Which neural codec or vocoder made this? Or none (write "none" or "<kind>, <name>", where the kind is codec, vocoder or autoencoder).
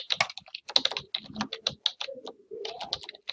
none